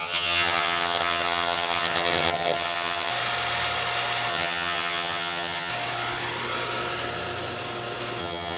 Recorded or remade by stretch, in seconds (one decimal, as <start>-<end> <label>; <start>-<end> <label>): 0.0-3.1 remade; 3.1-4.3 recorded; 4.3-5.7 remade; 5.7-8.2 recorded; 8.2-8.6 remade